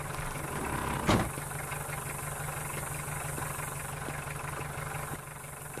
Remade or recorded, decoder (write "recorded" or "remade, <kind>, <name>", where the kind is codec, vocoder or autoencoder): recorded